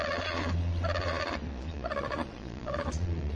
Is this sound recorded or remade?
remade